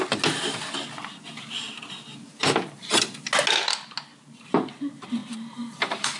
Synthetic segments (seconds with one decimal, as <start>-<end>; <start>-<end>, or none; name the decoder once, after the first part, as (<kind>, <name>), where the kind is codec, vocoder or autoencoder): 2.3-3.0 (vocoder, BigVGAN v2); 5.2-6.2